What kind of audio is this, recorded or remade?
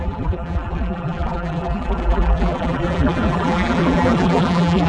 remade